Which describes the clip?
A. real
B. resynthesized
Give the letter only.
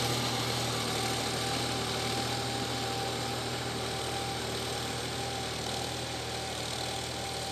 A